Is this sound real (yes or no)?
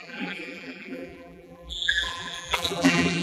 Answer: no